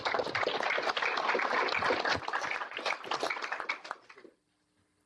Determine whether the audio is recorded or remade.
recorded